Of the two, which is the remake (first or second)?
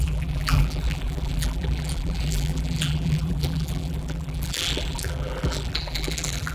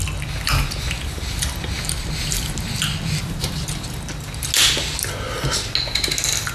first